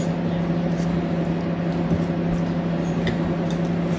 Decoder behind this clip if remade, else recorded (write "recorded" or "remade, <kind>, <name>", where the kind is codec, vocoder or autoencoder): recorded